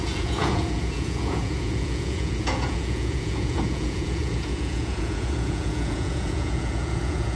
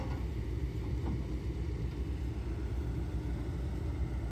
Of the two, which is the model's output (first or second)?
first